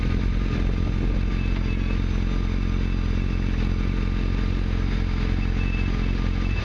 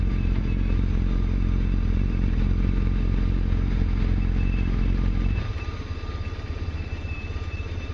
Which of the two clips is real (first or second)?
first